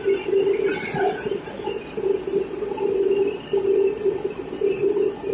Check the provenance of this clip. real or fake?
real